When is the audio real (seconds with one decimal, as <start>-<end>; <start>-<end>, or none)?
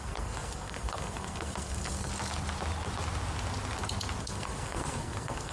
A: 2.1-4.2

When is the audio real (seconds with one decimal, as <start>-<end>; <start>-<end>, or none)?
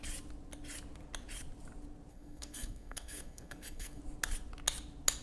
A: 0.0-2.1; 4.0-5.2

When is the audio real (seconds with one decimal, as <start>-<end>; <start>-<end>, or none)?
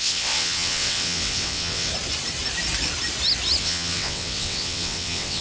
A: 1.9-3.6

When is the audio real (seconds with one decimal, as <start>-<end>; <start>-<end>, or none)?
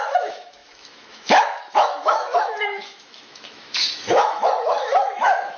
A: none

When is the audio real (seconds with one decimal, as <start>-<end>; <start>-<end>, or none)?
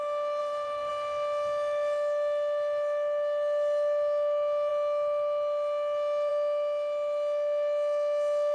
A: 0.0-0.4; 0.9-8.5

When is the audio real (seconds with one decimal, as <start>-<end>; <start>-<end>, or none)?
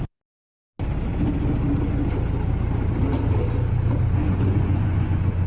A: 0.0-4.2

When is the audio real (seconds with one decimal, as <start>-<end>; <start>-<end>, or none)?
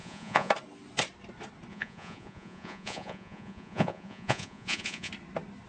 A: 0.5-1.7; 5.1-5.7